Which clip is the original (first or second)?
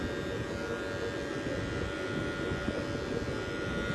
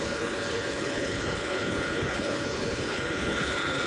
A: first